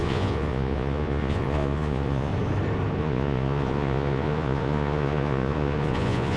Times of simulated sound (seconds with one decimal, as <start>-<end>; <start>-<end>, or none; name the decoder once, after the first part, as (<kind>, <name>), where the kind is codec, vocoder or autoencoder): 0.0-2.3 (vocoder, Vocos); 3.0-6.4

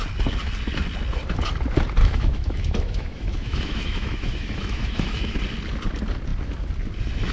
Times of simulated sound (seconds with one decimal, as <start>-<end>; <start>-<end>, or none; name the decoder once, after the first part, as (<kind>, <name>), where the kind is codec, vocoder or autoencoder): 2.0-5.4 (autoencoder, DAC-VAE)

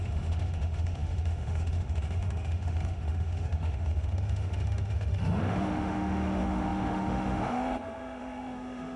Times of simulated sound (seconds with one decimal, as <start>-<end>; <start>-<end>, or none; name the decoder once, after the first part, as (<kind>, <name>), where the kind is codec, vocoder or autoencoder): 0.0-9.0 (autoencoder, DAC-VAE)

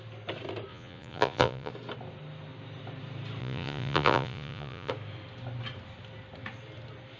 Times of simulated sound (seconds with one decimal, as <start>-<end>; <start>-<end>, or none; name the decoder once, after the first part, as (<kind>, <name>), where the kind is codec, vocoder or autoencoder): 0.7-1.7 (vocoder, Vocos); 3.4-4.9

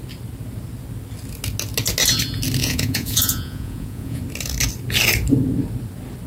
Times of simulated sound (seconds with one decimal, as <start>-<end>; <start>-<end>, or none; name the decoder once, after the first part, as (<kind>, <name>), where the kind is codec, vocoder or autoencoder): 2.6-4.2 (vocoder, Vocos)